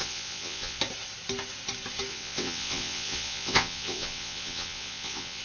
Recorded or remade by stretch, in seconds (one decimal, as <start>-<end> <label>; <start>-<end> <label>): 0.0-0.8 remade; 0.8-2.1 recorded; 2.1-5.4 remade